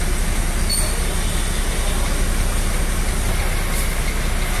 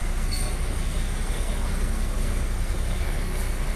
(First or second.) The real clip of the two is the first